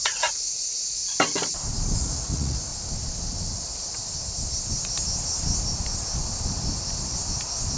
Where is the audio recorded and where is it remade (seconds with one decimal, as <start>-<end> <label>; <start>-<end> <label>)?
0.0-1.0 remade; 1.0-2.0 recorded; 2.0-2.7 remade; 2.7-7.8 recorded